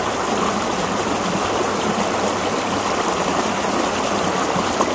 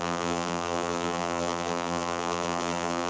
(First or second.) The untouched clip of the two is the first